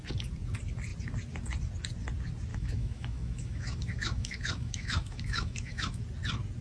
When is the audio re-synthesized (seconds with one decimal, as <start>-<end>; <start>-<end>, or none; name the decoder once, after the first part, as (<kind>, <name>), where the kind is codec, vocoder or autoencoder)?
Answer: 2.5-6.0 (autoencoder, DAC-VAE)